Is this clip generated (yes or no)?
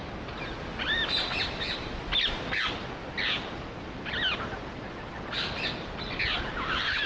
no